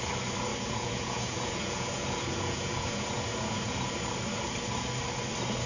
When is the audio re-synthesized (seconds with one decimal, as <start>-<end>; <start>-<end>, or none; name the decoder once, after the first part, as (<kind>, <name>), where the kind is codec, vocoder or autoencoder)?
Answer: 0.5-3.9 (vocoder, Vocos)